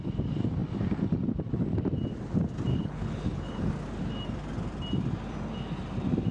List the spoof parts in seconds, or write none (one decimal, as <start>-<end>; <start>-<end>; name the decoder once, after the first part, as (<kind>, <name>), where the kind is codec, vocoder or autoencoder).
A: 2.7-3.7 (codec, HILCodec)